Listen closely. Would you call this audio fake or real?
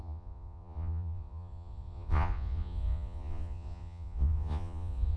fake